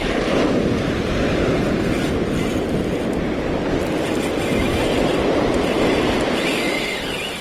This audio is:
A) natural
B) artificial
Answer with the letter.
A